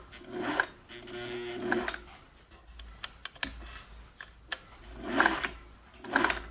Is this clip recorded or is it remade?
recorded